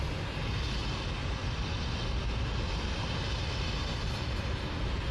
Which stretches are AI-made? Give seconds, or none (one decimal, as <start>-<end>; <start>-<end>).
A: none